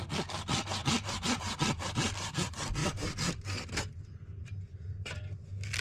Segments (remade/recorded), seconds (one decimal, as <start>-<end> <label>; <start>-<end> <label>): 0.0-2.8 recorded; 2.8-3.9 remade; 3.9-5.8 recorded